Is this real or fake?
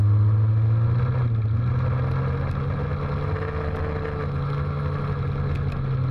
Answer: real